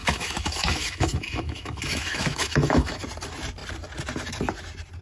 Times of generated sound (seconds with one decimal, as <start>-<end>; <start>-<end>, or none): 0.0-3.0